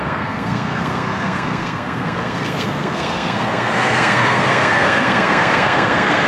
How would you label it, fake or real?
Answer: fake